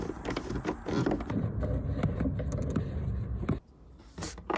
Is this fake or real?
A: real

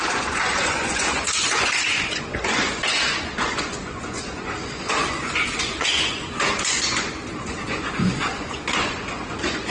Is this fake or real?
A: fake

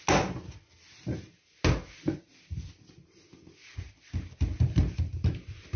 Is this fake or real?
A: real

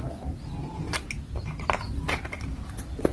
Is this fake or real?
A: real